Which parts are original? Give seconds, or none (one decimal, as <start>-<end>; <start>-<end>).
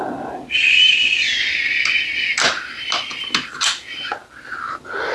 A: 0.0-5.1